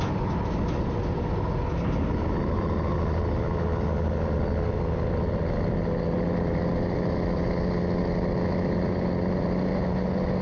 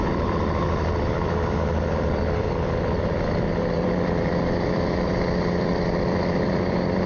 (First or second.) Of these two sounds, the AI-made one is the second